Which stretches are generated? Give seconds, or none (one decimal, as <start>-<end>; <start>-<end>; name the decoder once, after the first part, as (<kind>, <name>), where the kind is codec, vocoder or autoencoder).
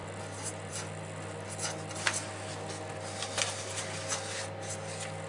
none